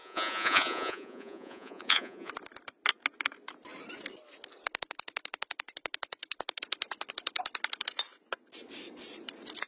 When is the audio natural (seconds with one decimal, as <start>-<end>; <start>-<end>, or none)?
2.3-9.7

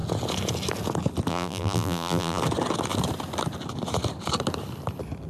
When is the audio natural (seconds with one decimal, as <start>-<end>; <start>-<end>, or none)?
0.0-1.3; 2.4-5.3

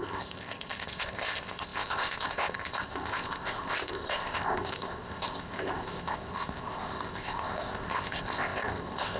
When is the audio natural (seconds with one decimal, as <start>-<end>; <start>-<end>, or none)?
none

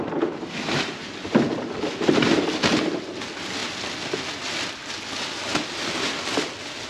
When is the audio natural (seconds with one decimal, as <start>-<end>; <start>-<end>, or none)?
0.0-6.9

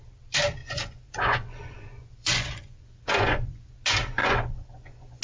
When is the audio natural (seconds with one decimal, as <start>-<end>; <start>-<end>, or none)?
0.0-0.6; 3.7-4.2